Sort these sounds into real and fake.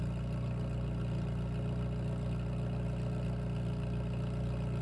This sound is real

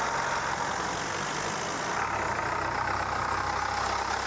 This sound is real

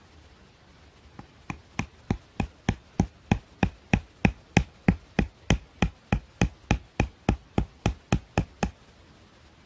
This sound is real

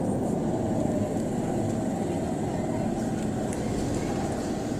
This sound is real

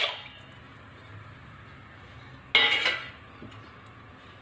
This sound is real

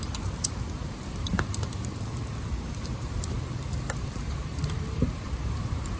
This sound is fake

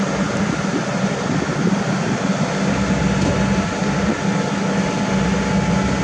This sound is real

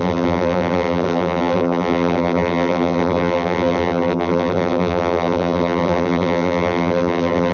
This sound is fake